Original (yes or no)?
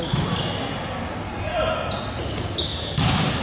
yes